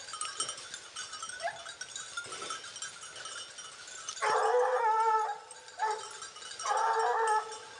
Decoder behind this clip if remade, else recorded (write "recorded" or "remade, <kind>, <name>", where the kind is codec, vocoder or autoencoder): recorded